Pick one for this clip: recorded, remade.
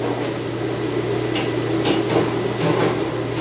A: recorded